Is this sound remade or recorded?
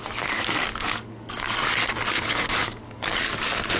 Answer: remade